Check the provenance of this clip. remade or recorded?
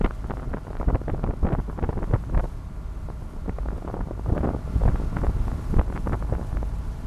recorded